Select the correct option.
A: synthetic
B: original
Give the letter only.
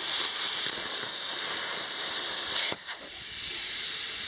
A